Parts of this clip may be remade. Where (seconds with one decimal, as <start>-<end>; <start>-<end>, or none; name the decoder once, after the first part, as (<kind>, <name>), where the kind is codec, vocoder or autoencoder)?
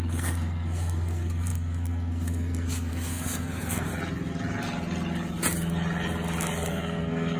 0.0-3.9 (codec, SNAC); 6.7-7.4